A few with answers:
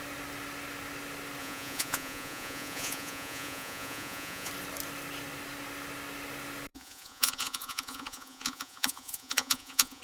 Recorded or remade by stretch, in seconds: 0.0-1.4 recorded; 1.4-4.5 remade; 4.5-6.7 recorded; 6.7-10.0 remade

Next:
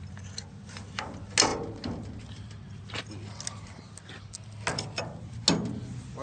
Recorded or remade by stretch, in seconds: 0.0-6.2 recorded

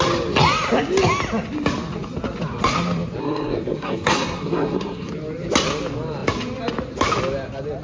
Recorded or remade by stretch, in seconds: 0.0-3.2 recorded; 3.2-5.1 remade; 5.1-7.8 recorded

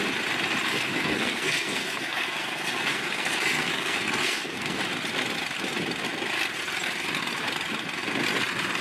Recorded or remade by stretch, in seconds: 0.0-0.7 recorded; 0.7-4.8 remade; 4.8-8.8 recorded

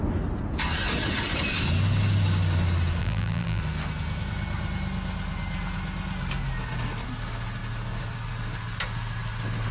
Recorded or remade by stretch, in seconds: 0.0-3.0 recorded; 3.0-3.6 remade; 3.6-9.7 recorded

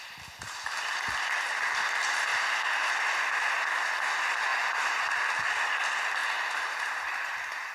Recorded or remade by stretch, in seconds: 0.0-2.3 recorded; 2.3-3.1 remade; 3.1-4.5 recorded; 4.5-5.4 remade; 5.4-6.2 recorded; 6.2-7.7 remade

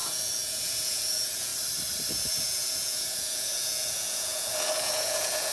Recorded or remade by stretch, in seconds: 0.0-1.5 remade; 1.5-2.1 recorded; 2.1-5.5 remade

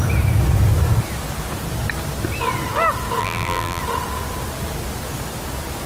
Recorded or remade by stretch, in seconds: 0.0-3.2 recorded; 3.2-3.8 remade; 3.8-5.9 recorded